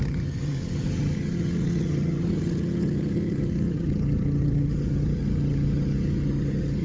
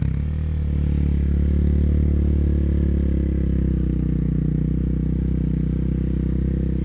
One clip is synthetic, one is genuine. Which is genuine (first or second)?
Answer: second